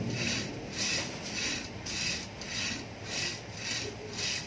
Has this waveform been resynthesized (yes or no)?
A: no